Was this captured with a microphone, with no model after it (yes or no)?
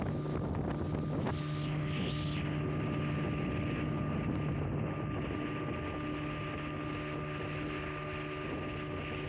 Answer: yes